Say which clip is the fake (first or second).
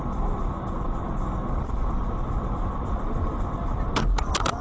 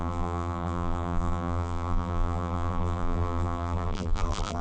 second